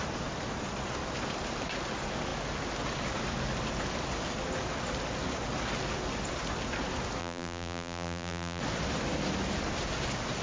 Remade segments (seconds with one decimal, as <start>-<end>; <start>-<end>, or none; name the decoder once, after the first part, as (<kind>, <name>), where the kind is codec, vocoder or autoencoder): 7.2-8.6 (vocoder, BigVGAN v2)